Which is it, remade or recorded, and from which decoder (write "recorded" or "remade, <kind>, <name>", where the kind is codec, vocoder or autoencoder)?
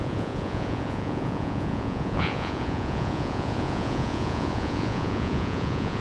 remade, vocoder, Vocos